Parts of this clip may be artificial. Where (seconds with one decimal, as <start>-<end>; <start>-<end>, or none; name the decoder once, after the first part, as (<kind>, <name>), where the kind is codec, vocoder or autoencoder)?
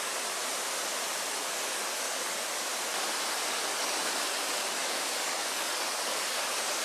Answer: 0.0-0.4 (codec, DAC); 1.3-2.7; 3.5-6.8